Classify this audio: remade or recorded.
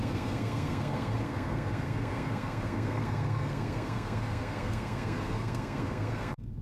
remade